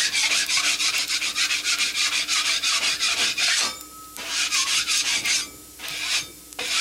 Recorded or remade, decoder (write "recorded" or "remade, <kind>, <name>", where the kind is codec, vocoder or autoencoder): remade, vocoder, BigVGAN v2